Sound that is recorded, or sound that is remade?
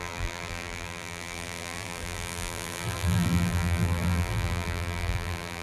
remade